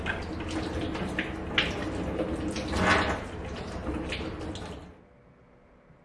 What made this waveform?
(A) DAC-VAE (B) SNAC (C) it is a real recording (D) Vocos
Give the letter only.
C